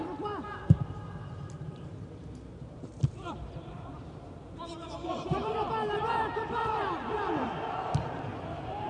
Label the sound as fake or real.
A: fake